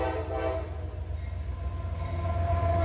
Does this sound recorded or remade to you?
recorded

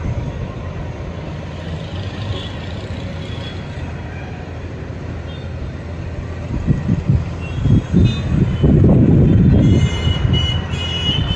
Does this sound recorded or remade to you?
recorded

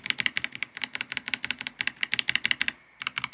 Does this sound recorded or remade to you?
recorded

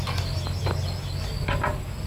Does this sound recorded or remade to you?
recorded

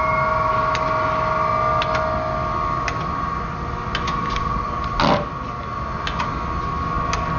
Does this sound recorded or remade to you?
recorded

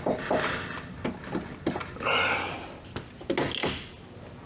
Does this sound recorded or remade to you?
recorded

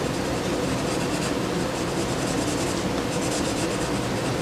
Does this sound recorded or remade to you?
recorded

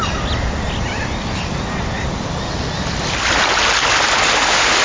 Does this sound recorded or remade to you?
recorded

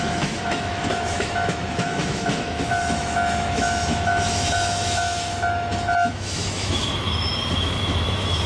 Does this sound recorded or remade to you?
remade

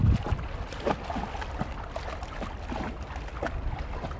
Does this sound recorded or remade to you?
recorded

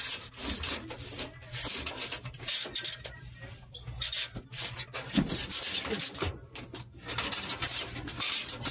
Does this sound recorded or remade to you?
remade